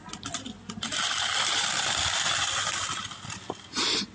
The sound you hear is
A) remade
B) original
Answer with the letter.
B